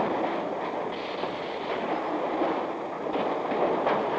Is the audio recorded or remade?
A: recorded